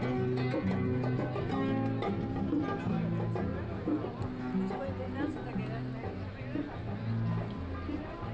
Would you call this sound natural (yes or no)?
yes